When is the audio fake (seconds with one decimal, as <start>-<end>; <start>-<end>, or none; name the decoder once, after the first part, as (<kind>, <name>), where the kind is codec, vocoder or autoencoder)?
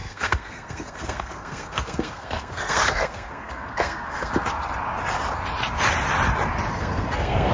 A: 0.0-4.3 (codec, SNAC); 6.7-7.5